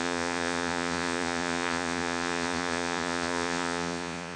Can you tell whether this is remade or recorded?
remade